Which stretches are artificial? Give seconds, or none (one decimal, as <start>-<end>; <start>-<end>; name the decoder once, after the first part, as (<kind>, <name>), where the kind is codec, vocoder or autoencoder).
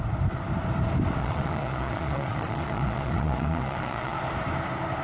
1.2-4.2 (vocoder, Vocos)